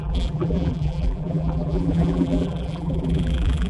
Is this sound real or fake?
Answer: fake